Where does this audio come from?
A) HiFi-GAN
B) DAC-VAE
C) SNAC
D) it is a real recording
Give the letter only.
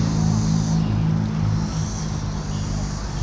D